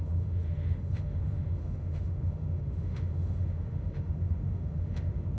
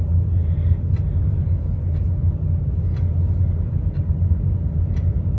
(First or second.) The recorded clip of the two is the second